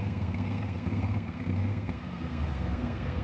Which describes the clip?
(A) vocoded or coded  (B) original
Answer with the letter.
A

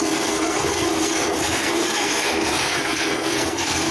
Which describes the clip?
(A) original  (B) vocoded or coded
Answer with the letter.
B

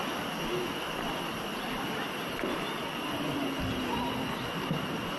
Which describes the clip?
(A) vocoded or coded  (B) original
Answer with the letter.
B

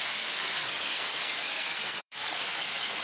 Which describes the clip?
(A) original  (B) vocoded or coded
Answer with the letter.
B